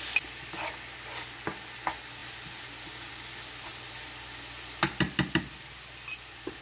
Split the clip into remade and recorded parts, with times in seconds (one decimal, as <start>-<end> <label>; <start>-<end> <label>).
0.0-6.6 recorded